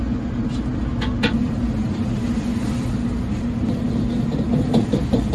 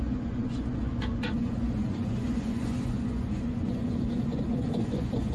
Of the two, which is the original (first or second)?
first